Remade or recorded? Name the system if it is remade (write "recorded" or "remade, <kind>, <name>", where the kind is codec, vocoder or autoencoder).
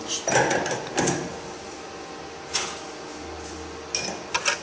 recorded